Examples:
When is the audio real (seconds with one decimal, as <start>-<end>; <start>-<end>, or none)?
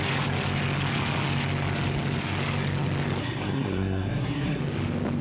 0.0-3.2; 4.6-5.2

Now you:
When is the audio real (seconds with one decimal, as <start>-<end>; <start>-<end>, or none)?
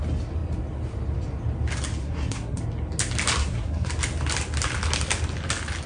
0.0-2.0; 2.6-3.4; 3.9-5.9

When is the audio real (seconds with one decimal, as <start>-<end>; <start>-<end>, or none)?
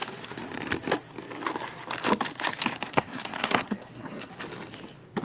0.0-2.9; 4.3-5.2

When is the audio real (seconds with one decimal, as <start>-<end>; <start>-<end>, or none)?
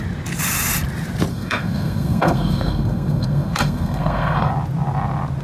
0.0-1.3; 4.5-5.4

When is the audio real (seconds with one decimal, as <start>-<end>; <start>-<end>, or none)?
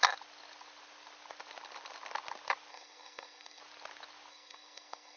0.0-2.7; 3.6-4.3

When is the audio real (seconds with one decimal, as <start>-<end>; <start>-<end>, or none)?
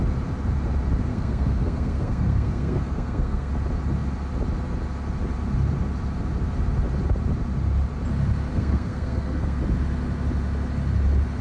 0.0-1.1; 3.5-8.5; 9.6-11.4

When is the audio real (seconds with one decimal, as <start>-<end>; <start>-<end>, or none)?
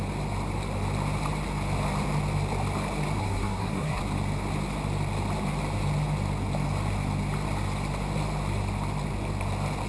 0.0-3.2; 4.0-9.9